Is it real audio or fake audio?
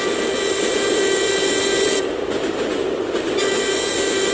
real